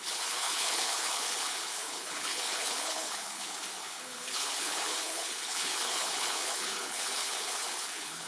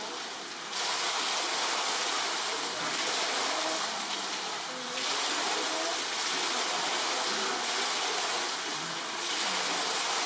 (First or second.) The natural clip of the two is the second